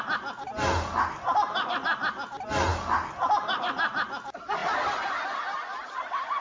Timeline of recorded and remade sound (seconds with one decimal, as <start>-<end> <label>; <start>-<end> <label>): 0.0-6.4 recorded